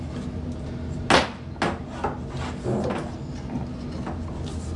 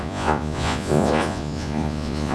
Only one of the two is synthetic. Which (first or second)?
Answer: second